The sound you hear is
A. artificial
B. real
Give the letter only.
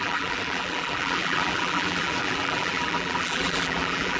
A